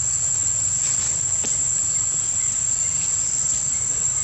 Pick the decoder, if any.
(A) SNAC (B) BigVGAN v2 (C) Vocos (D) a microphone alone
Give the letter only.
D